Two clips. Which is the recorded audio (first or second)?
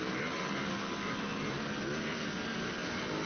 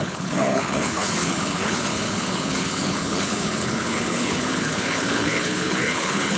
first